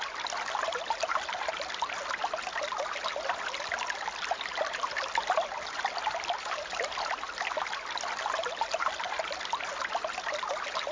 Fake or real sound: fake